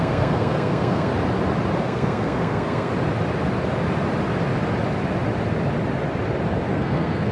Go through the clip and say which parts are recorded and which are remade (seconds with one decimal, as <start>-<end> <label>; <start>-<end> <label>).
0.0-1.1 remade; 1.1-1.8 recorded; 1.8-2.9 remade; 2.9-6.7 recorded; 6.7-7.3 remade